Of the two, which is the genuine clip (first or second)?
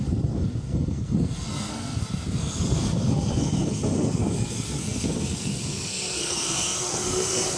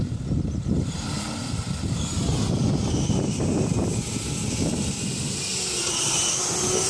second